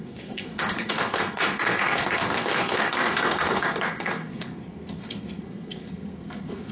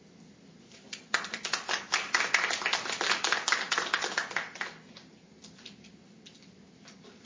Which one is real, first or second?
second